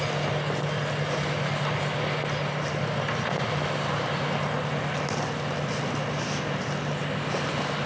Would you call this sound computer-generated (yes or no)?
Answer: no